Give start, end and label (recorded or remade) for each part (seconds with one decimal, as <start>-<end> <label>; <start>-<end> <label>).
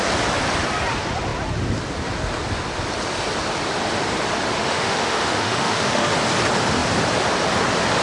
0.0-4.6 recorded; 4.6-6.1 remade; 6.1-8.0 recorded